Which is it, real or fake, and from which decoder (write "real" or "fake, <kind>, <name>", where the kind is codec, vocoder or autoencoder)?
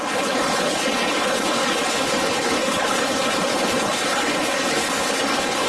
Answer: fake, codec, HILCodec